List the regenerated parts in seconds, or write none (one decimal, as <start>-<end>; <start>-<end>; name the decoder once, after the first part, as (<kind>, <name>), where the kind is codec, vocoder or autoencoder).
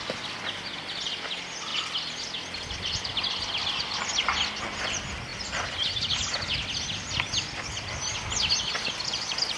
none